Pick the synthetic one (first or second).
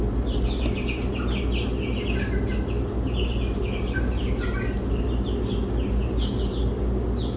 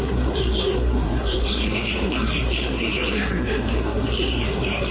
second